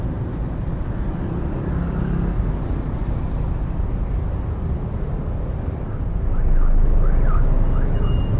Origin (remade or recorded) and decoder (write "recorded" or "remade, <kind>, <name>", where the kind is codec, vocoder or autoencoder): recorded